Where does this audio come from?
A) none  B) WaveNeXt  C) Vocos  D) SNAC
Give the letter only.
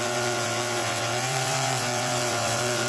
B